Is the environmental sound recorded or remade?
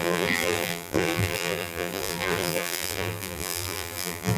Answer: remade